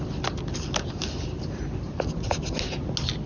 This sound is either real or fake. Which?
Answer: real